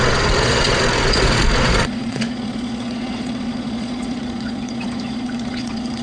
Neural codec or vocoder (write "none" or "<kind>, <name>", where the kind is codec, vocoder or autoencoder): vocoder, Vocos